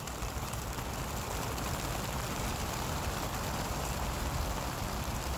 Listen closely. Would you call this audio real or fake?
fake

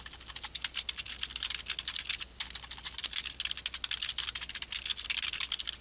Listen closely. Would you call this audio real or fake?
real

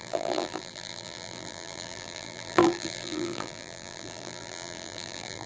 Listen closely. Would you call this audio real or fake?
fake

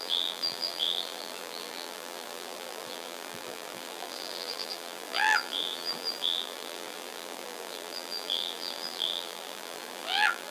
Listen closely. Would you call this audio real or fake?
fake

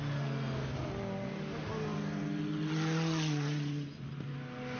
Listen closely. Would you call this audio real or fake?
real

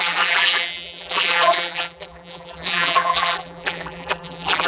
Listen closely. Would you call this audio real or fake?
fake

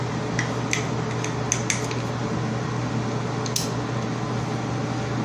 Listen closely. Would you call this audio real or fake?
real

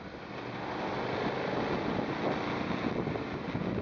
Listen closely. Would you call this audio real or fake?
real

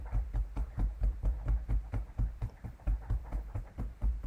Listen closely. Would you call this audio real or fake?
fake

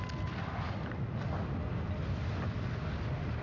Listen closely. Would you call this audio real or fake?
real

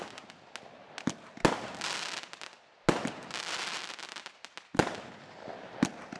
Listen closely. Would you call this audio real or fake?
real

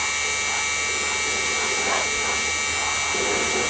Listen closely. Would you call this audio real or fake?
real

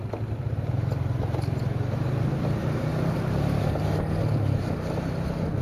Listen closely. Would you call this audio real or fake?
real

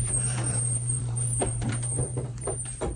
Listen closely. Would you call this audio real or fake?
fake